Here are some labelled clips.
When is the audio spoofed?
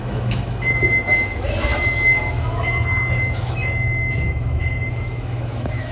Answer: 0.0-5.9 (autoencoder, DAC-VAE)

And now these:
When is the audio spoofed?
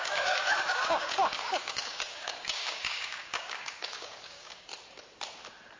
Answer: 0.0-4.7 (codec, DAC)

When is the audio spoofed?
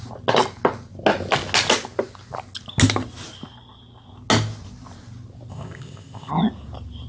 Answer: 5.5-6.3 (codec, ZipCodec)